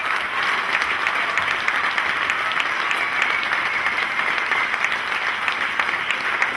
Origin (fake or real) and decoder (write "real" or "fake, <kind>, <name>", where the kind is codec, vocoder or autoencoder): fake, vocoder, BigVGAN v2